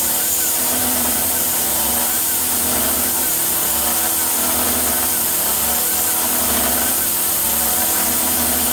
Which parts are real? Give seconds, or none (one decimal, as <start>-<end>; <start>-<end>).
3.3-7.8